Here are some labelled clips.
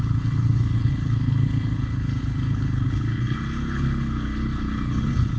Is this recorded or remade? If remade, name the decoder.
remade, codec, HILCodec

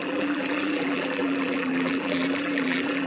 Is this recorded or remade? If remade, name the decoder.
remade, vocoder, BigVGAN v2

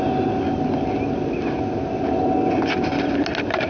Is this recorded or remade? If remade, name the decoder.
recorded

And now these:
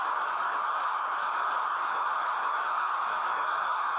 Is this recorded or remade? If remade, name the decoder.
remade, codec, DAC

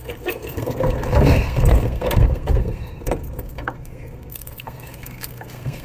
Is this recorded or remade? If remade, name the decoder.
remade, codec, SNAC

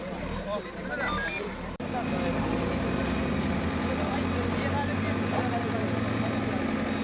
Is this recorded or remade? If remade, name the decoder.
recorded